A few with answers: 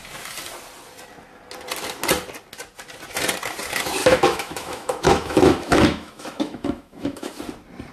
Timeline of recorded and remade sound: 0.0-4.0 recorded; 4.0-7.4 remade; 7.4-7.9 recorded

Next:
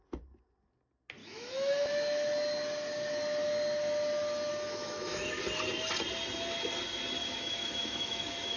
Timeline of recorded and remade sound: 0.0-1.2 recorded; 1.2-1.9 remade; 1.9-4.5 recorded; 4.5-5.3 remade; 5.3-7.2 recorded; 7.2-8.6 remade

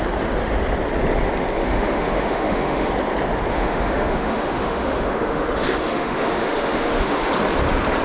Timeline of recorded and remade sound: 0.0-1.6 recorded; 1.6-2.9 remade; 2.9-3.5 recorded; 3.5-7.3 remade; 7.3-8.0 recorded